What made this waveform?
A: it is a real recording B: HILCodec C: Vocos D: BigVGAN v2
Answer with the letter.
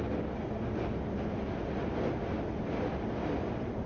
A